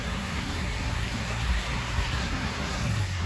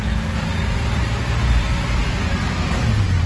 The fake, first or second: first